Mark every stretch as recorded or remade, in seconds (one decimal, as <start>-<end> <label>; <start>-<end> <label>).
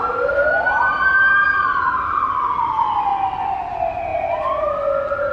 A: 0.0-1.7 recorded; 1.7-2.3 remade; 2.3-4.1 recorded; 4.1-4.7 remade; 4.7-5.3 recorded